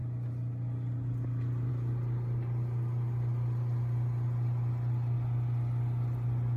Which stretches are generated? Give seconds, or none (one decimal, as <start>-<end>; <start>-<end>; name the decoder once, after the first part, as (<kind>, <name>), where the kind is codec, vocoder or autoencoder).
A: none